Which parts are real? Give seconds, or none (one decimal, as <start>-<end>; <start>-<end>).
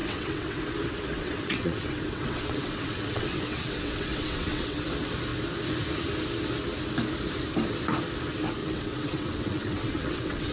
0.6-1.1; 4.8-8.6